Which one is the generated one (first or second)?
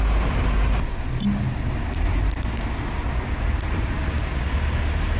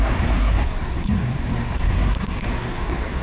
second